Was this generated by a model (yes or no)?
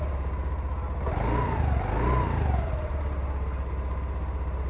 no